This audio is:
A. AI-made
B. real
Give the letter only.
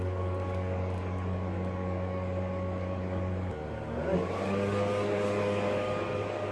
A